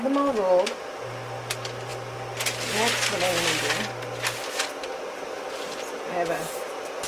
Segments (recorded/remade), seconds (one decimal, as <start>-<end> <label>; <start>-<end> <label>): 0.0-7.1 recorded